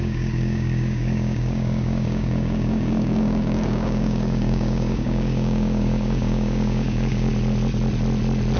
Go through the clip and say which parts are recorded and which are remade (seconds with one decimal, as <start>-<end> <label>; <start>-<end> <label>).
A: 0.0-7.3 remade; 7.3-8.6 recorded